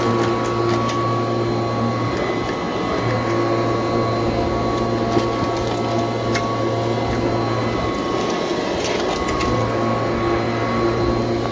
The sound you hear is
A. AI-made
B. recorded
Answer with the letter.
B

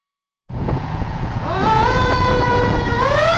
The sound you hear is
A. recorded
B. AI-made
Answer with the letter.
B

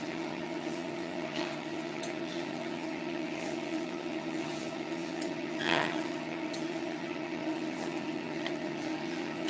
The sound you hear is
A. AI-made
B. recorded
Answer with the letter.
A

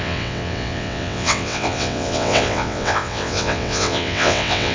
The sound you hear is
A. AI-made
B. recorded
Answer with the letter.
A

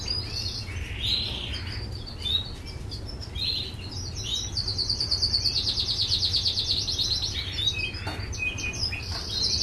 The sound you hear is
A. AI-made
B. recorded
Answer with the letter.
B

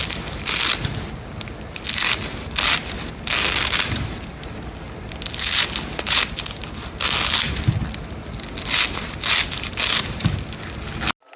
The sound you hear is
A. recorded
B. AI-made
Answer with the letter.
A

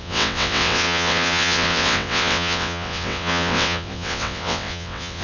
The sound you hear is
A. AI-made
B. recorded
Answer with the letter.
A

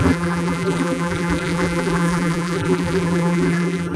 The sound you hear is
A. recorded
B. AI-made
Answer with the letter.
B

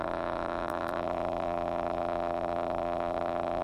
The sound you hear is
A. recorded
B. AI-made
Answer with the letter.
B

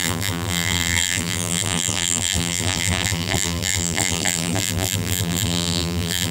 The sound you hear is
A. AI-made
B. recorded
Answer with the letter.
A